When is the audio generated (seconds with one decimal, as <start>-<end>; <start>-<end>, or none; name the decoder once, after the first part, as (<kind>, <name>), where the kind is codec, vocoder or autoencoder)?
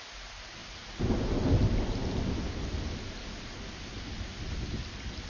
none